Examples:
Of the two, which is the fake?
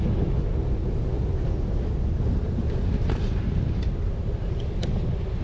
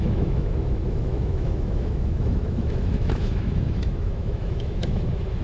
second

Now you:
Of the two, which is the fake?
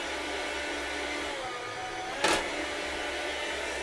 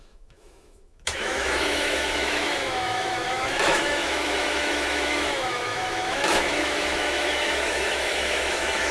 second